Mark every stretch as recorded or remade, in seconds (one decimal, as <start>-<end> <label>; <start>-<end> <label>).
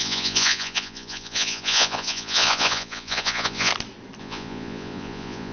0.0-3.7 remade; 3.7-4.2 recorded; 4.2-5.5 remade